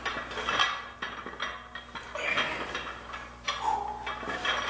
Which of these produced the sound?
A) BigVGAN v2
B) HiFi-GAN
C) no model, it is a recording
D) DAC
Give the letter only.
C